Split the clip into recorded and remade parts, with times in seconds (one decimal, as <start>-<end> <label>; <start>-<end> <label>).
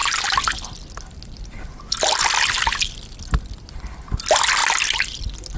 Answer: 0.0-5.6 recorded